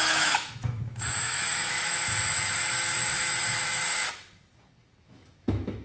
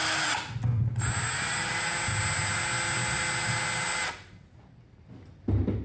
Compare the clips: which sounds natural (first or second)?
second